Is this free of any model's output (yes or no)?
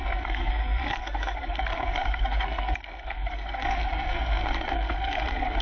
no